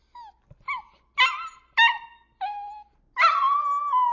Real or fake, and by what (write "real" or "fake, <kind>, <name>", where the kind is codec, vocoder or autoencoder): real